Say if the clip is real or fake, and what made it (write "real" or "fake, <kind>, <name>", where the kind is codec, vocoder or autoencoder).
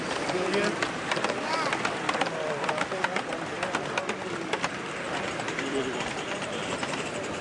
fake, vocoder, BigVGAN v2